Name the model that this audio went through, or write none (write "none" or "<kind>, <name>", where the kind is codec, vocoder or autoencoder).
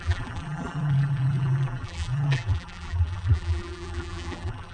vocoder, BigVGAN v2